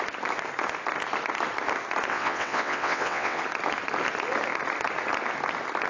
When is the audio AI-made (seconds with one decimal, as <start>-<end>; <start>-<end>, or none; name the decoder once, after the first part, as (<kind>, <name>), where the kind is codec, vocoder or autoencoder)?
2.1-3.4 (vocoder, WaveNeXt)